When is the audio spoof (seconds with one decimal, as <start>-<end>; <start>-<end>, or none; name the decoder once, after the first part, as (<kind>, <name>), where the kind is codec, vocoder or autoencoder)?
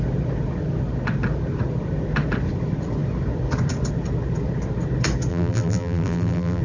5.3-6.6 (vocoder, BigVGAN v2)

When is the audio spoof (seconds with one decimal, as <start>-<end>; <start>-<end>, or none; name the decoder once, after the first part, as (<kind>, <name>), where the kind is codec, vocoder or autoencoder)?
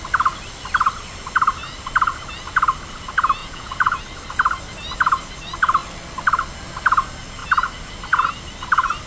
3.4-4.0 (vocoder, Vocos)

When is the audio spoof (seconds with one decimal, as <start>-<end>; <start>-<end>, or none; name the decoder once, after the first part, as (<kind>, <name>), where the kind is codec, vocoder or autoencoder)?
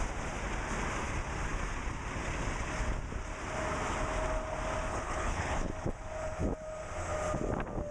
4.9-5.7 (codec, HILCodec)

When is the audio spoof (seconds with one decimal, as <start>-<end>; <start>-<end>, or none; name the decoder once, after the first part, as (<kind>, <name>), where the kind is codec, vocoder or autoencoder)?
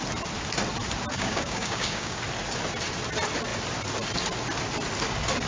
1.1-2.2 (codec, DAC)